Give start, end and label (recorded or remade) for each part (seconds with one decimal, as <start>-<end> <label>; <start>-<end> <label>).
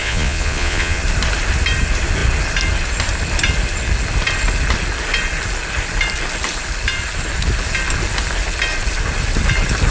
0.0-1.0 remade; 1.0-9.9 recorded